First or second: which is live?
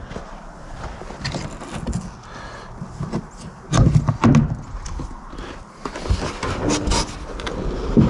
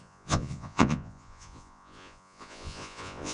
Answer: first